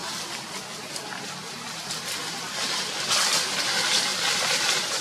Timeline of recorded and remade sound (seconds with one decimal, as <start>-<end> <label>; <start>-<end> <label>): 0.0-4.1 recorded; 4.1-5.0 remade